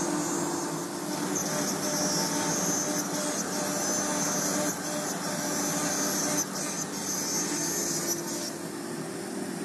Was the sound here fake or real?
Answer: real